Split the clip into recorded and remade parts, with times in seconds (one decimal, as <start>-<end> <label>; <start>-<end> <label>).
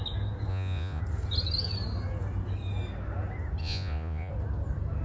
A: 0.0-0.5 recorded; 0.5-1.0 remade; 1.0-3.6 recorded; 3.6-4.3 remade; 4.3-5.0 recorded